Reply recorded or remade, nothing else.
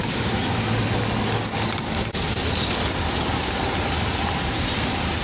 recorded